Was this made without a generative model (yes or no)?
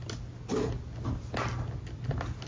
yes